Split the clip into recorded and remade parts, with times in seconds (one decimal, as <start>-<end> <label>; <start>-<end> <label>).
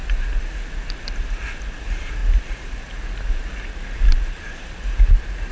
0.0-1.8 recorded; 1.8-2.2 remade; 2.2-5.5 recorded